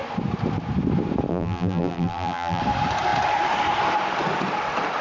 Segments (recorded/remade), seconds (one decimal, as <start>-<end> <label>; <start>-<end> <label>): 0.0-1.3 recorded; 1.3-2.6 remade; 2.6-5.0 recorded